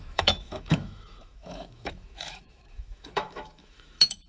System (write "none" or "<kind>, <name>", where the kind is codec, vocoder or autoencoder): autoencoder, DAC-VAE